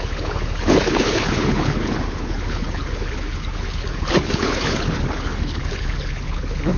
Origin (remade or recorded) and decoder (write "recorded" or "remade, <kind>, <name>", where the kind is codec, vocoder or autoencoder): remade, codec, HILCodec